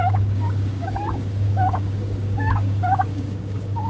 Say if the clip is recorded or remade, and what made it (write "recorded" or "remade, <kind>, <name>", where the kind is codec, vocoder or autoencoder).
remade, codec, DAC